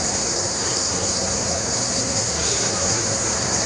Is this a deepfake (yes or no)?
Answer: yes